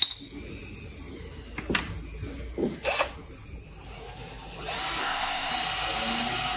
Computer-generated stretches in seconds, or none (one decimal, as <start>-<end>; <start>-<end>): 5.0-5.5